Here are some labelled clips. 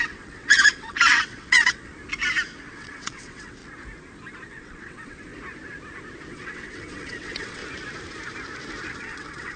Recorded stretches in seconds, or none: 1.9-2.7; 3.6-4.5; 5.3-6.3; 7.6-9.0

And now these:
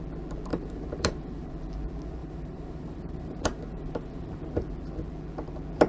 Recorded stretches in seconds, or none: 0.0-0.5; 1.5-2.2; 4.4-5.9

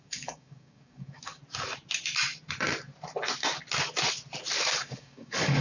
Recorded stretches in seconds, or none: 1.4-4.8

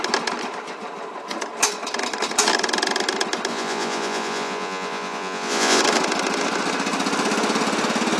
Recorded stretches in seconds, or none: 0.0-3.5; 5.8-8.2